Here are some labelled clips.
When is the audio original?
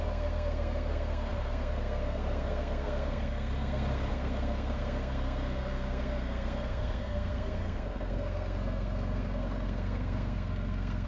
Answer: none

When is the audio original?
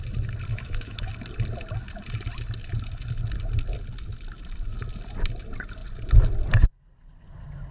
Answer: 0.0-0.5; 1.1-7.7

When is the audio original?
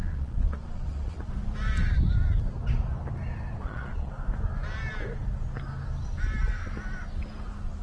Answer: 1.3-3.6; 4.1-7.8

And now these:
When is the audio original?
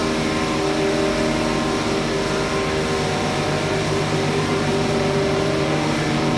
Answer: 0.0-3.1